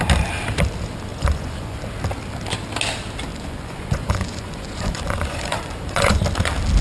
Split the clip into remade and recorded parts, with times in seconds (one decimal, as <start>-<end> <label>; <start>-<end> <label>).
0.0-1.1 recorded; 1.1-1.8 remade; 1.8-3.3 recorded; 3.3-6.2 remade; 6.2-6.8 recorded